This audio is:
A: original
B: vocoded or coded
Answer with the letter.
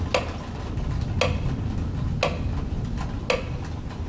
A